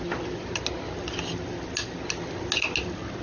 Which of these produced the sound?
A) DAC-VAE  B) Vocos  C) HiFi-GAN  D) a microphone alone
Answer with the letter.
D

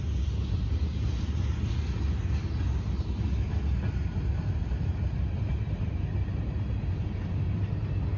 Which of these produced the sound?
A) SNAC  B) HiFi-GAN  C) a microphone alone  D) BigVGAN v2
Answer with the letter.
C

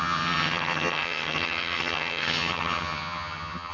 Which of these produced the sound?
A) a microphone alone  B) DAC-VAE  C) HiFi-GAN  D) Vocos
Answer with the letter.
C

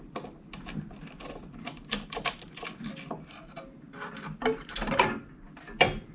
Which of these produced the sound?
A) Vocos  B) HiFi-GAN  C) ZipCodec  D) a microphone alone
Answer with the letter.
D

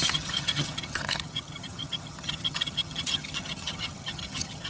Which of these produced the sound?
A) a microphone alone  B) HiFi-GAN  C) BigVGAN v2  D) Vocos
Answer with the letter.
B